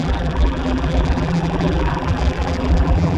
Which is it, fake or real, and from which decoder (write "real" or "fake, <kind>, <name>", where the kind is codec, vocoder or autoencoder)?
fake, vocoder, BigVGAN v2